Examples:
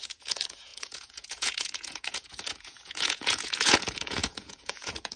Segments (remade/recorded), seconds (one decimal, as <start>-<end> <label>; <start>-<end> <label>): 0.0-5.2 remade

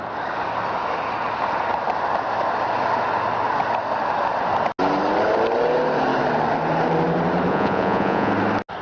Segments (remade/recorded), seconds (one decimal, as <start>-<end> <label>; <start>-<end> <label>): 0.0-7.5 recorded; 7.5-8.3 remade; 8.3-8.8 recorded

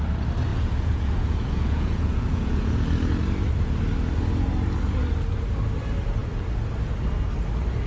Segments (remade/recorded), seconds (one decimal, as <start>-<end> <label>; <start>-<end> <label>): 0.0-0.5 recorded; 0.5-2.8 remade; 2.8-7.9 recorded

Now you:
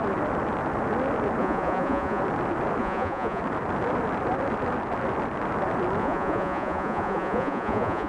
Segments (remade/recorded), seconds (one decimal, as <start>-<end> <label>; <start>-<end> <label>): 0.0-1.4 recorded; 1.4-2.2 remade; 2.2-2.8 recorded; 2.8-3.4 remade; 3.4-6.0 recorded; 6.0-8.1 remade

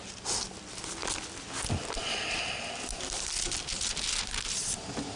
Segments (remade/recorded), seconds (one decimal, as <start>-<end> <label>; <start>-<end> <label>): 0.0-5.2 recorded

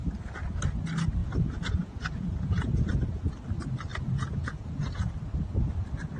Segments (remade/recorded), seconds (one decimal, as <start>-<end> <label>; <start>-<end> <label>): 0.0-1.2 recorded; 1.2-3.3 remade; 3.3-3.9 recorded; 3.9-5.1 remade; 5.1-6.2 recorded

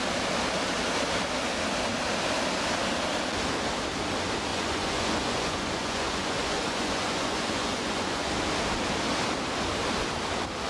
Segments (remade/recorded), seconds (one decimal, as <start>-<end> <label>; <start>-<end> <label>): 0.0-4.5 recorded; 4.5-8.3 remade; 8.3-10.7 recorded